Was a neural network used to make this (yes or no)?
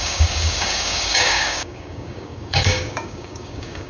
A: yes